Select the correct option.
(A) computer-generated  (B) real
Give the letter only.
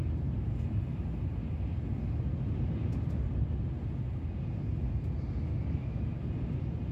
B